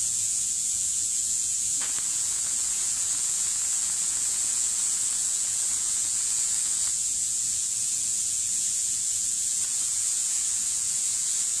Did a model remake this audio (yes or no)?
yes